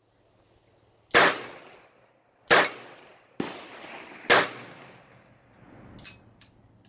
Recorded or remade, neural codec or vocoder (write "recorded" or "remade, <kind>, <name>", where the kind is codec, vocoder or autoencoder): recorded